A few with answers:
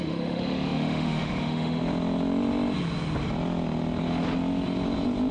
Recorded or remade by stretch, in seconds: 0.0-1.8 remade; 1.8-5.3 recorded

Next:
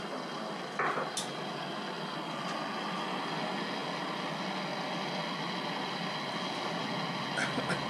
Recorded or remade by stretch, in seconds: 0.0-7.9 recorded

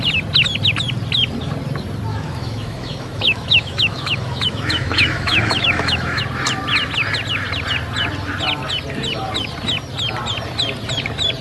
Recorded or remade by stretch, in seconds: 0.0-2.1 recorded; 2.1-6.2 remade; 6.2-11.4 recorded